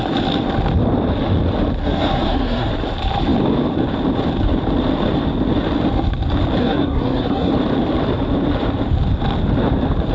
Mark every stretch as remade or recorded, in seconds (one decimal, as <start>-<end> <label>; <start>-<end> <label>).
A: 0.0-1.8 recorded; 1.8-2.7 remade; 2.7-6.6 recorded; 6.6-7.5 remade; 7.5-10.1 recorded